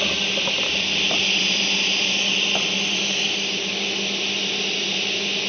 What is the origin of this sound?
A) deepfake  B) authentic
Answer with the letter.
B